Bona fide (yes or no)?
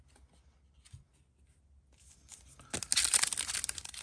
yes